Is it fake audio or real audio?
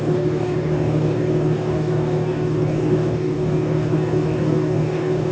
fake